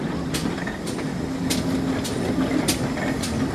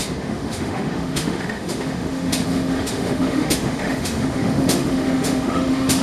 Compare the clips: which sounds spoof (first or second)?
second